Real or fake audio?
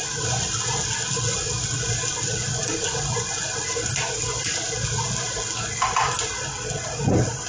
real